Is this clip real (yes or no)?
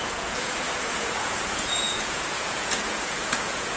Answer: no